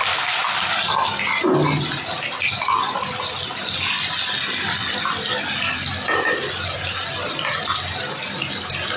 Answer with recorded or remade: recorded